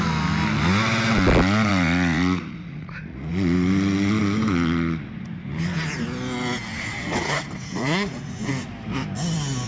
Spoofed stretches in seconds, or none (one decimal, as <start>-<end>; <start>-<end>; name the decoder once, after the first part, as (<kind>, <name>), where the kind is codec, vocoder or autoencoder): 1.7-3.3 (vocoder, Vocos); 6.7-8.5